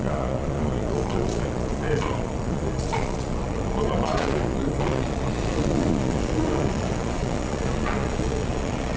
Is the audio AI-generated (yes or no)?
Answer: yes